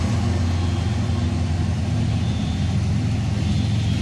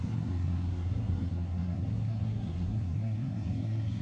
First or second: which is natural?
first